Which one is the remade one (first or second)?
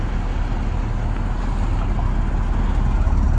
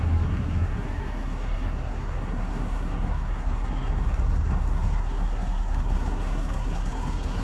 second